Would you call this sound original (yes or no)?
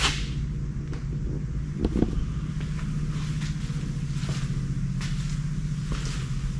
yes